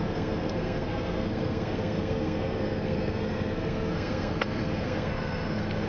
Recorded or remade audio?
remade